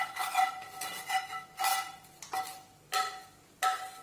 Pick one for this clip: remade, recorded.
recorded